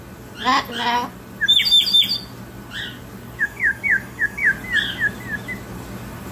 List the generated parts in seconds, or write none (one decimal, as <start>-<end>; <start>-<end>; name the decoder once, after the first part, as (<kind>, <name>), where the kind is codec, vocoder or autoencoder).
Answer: 3.4-4.5 (codec, DAC)